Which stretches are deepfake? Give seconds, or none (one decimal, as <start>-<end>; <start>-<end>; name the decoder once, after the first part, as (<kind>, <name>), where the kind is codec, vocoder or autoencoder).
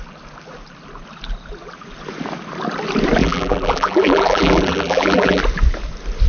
3.2-5.4 (vocoder, BigVGAN v2)